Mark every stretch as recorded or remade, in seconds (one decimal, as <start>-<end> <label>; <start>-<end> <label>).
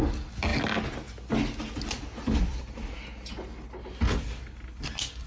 0.0-5.3 recorded